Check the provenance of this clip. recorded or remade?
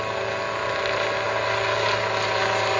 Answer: recorded